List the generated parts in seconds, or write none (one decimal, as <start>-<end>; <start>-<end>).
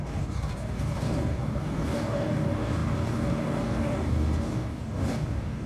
0.0-5.7